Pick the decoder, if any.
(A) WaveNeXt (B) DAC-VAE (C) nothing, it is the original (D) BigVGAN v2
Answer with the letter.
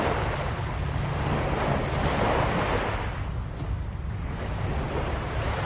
C